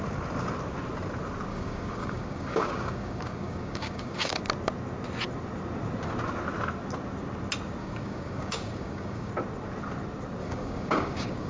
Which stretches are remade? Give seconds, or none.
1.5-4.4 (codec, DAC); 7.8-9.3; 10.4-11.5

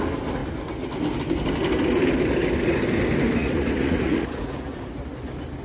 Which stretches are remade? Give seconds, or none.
3.4-4.4 (vocoder, Vocos)

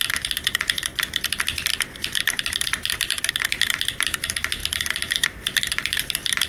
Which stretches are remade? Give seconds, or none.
4.6-6.5 (vocoder, BigVGAN v2)

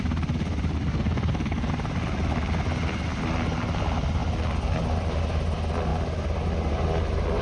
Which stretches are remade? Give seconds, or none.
0.9-1.7 (codec, SNAC)

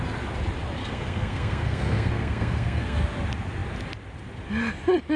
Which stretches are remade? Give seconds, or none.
0.8-3.0 (codec, SNAC)